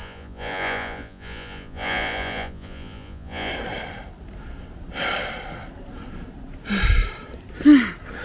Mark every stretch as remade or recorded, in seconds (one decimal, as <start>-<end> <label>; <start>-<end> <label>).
0.0-3.5 remade; 3.5-8.2 recorded